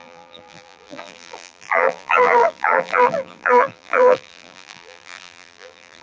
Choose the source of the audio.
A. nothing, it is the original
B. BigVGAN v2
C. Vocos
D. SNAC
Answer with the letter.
B